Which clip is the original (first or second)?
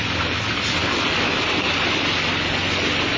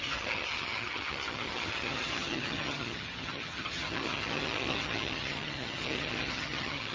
first